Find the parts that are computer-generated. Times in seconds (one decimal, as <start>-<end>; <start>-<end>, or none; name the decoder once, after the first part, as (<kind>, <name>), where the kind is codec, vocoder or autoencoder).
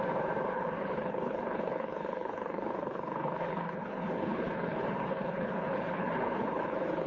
0.5-7.1 (codec, HILCodec)